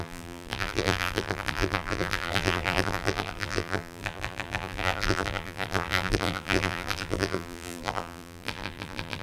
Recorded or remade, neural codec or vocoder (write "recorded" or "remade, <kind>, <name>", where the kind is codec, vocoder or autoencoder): remade, vocoder, BigVGAN v2